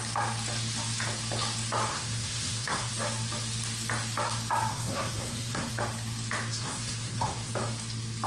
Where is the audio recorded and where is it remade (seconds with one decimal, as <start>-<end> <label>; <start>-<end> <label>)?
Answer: 0.0-1.9 recorded; 1.9-2.9 remade; 2.9-4.7 recorded; 4.7-5.7 remade; 5.7-6.5 recorded; 6.5-7.5 remade; 7.5-8.3 recorded